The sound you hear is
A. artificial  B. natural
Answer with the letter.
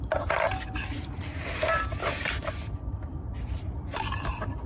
B